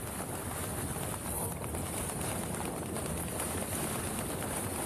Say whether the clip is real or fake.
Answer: real